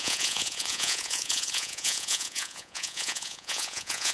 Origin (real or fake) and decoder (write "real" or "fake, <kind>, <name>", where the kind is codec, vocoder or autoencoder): fake, vocoder, Vocos